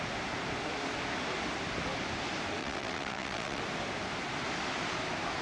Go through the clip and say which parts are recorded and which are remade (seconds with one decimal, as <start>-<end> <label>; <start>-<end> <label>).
0.0-2.6 recorded; 2.6-3.6 remade; 3.6-5.4 recorded